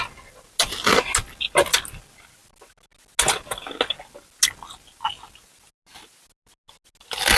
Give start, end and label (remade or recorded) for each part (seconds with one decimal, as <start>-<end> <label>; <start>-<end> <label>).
0.0-7.4 recorded

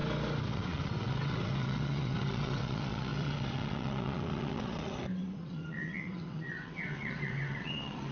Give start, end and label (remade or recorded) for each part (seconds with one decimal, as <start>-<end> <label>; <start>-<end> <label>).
0.0-0.5 recorded; 0.5-8.1 remade

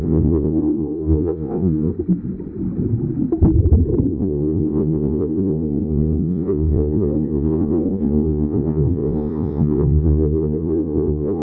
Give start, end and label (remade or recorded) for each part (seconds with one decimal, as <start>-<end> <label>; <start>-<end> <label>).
0.0-1.9 remade; 1.9-4.1 recorded; 4.1-11.4 remade